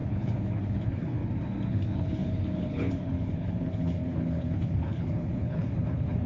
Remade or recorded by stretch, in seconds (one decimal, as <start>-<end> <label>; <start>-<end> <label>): 0.0-1.2 remade; 1.2-1.7 recorded; 1.7-6.3 remade

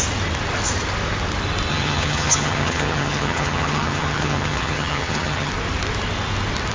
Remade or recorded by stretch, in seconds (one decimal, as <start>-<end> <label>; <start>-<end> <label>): 0.0-1.7 recorded; 1.7-5.5 remade; 5.5-6.7 recorded

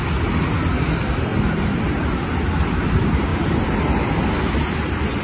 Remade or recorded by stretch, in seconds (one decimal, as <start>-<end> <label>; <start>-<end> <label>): 0.0-1.3 recorded; 1.3-1.9 remade; 1.9-5.2 recorded

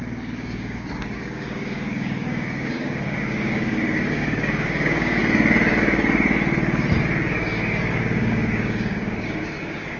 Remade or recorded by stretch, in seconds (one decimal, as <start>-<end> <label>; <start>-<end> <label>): 0.0-5.2 remade; 5.2-7.3 recorded; 7.3-10.0 remade